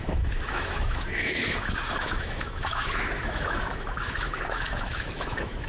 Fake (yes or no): yes